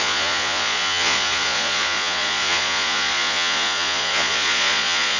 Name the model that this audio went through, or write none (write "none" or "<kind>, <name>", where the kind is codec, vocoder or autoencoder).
vocoder, Vocos